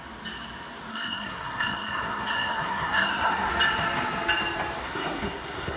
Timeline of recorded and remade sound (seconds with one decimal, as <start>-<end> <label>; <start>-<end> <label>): 0.0-0.9 recorded; 0.9-3.5 remade; 3.5-4.8 recorded; 4.8-5.8 remade